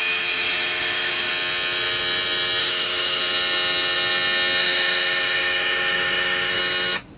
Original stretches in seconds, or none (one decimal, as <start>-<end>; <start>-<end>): 1.3-2.6; 3.2-4.6; 6.6-7.2